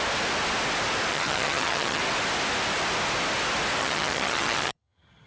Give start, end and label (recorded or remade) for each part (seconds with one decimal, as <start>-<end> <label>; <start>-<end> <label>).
0.0-1.1 recorded; 1.1-2.0 remade; 2.0-3.8 recorded; 3.8-5.3 remade